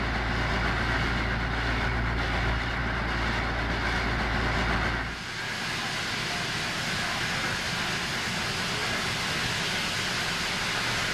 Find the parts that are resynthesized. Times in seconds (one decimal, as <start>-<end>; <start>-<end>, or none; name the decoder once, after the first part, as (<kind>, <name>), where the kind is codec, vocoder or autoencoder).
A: none